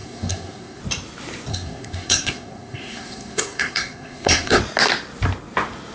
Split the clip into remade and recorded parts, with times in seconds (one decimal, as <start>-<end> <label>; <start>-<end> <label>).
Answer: 0.0-0.8 remade; 0.8-1.5 recorded; 1.5-4.6 remade; 4.6-5.9 recorded